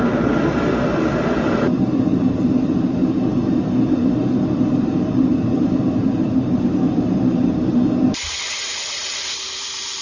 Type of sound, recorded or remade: remade